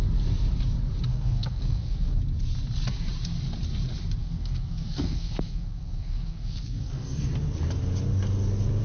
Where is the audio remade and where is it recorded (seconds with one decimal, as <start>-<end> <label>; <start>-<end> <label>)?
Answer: 0.0-1.1 recorded; 1.1-2.2 remade; 2.2-4.2 recorded; 4.2-7.3 remade; 7.3-8.8 recorded